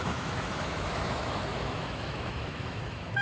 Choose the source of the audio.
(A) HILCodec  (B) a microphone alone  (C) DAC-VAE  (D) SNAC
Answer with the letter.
C